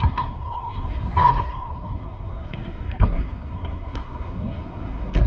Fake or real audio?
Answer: fake